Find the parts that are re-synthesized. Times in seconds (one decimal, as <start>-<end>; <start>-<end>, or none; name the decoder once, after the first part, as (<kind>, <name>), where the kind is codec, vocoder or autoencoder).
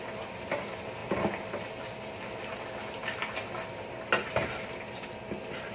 none